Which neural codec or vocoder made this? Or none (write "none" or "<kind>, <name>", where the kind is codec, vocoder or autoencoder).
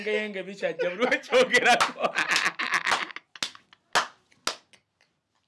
none